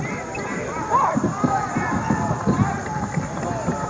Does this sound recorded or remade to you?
recorded